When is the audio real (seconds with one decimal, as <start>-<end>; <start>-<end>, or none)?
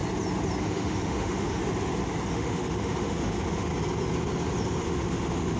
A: 0.0-0.6; 1.6-2.3; 3.7-4.8